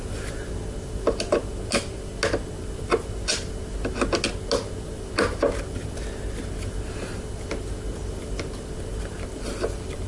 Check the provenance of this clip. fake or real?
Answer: real